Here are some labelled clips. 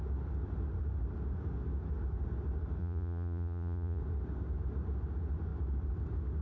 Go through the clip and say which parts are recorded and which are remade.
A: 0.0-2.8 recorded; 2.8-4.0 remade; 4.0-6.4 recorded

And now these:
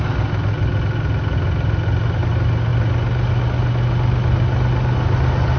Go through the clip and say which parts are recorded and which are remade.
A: 0.0-5.6 recorded

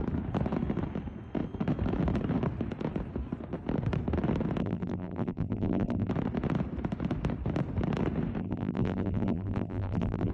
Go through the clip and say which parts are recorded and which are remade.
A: 0.0-4.6 recorded; 4.6-6.1 remade; 6.1-8.4 recorded; 8.4-10.3 remade

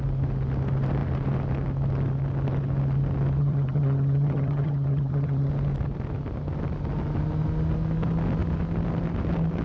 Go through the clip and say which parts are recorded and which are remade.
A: 0.0-3.4 recorded; 3.4-5.5 remade; 5.5-9.6 recorded

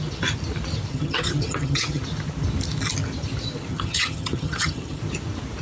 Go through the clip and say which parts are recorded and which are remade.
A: 0.0-0.9 recorded; 0.9-2.0 remade; 2.0-3.7 recorded; 3.7-5.0 remade; 5.0-5.6 recorded

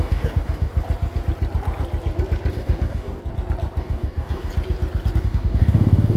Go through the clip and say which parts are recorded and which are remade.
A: 0.0-0.7 remade; 0.7-2.5 recorded; 2.5-3.2 remade; 3.2-3.8 recorded; 3.8-4.5 remade; 4.5-5.2 recorded; 5.2-6.2 remade

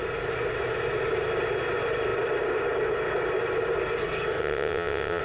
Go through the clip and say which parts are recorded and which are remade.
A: 0.0-4.4 recorded; 4.4-5.2 remade